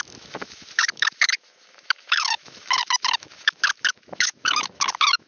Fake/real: fake